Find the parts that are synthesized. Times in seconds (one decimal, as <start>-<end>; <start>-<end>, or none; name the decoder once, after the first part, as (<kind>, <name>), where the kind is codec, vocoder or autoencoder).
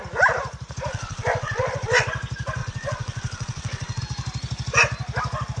0.9-2.1 (vocoder, WaveNeXt); 2.6-4.0